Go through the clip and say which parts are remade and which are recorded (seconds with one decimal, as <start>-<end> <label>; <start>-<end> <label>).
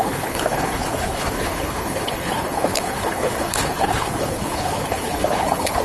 0.0-5.8 remade